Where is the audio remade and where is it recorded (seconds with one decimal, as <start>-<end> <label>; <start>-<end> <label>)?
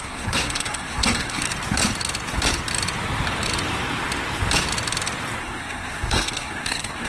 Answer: 0.0-1.4 remade; 1.4-5.4 recorded; 5.4-7.1 remade